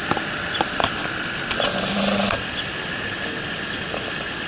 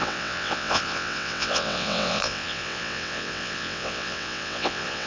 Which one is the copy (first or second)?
second